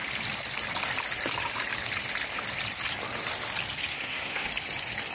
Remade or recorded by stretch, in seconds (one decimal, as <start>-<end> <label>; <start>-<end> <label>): 0.0-3.9 recorded; 3.9-4.5 remade; 4.5-5.1 recorded